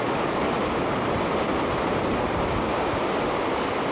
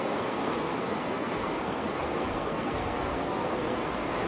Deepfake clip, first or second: second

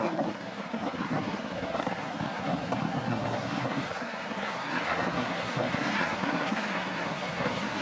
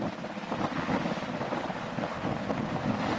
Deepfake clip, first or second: first